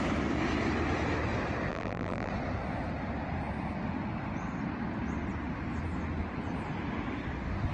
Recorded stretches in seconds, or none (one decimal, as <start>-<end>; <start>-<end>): 0.0-1.7; 2.3-7.7